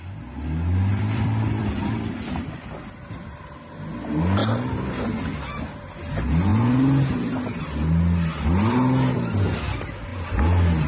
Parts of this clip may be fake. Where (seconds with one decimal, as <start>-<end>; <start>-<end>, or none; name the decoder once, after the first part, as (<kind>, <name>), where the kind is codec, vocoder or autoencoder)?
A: 0.9-3.7 (vocoder, BigVGAN v2)